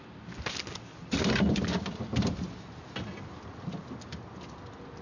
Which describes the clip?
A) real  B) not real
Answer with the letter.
A